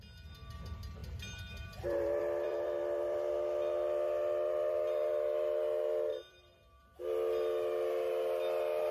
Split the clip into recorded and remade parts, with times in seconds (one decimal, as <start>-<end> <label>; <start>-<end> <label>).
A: 0.0-1.0 recorded; 1.0-3.3 remade; 3.3-6.1 recorded; 6.1-7.0 remade; 7.0-8.9 recorded